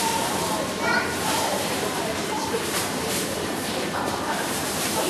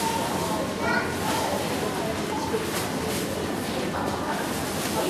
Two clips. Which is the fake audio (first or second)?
first